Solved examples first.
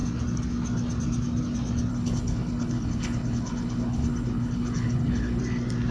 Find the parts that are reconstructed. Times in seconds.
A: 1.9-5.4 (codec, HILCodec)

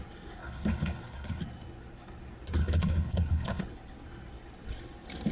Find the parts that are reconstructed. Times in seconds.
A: 0.4-1.4 (codec, HILCodec); 2.6-3.6

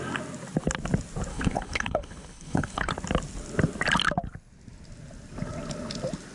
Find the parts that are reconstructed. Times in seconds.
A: 1.3-2.9 (codec, HILCodec)

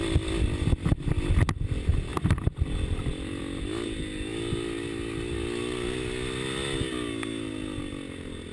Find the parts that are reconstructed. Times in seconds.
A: none

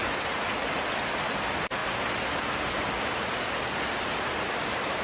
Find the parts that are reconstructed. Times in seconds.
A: none

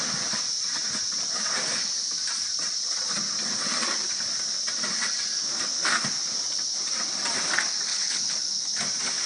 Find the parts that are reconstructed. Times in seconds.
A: 7.9-8.8 (codec, HILCodec)